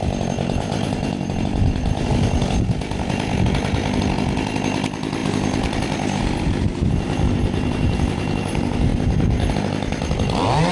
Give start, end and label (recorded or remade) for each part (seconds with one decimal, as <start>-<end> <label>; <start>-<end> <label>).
0.0-10.7 recorded